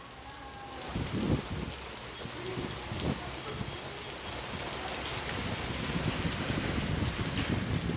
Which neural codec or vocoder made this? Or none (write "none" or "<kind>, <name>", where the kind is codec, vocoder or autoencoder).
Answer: none